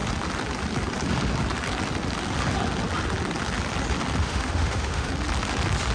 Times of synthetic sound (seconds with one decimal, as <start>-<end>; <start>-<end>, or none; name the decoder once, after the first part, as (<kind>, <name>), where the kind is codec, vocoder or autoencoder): 4.2-5.1 (autoencoder, DAC-VAE)